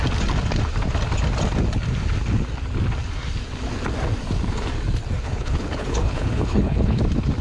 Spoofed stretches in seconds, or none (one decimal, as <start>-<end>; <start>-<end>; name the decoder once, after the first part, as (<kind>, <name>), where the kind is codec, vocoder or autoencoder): 5.2-7.0 (codec, HILCodec)